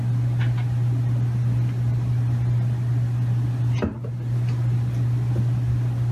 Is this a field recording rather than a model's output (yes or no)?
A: yes